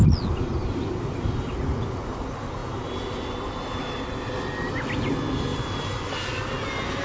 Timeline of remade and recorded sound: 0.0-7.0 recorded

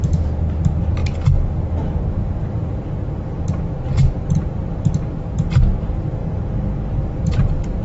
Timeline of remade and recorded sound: 0.0-1.0 remade; 1.0-5.1 recorded; 5.1-6.2 remade; 6.2-7.2 recorded; 7.2-7.8 remade